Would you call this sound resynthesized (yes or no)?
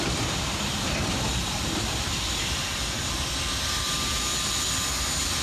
no